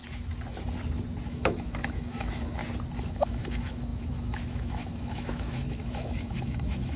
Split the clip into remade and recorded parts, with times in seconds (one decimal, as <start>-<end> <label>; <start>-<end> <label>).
0.0-1.3 recorded; 1.3-2.6 remade; 2.6-3.1 recorded; 3.1-7.0 remade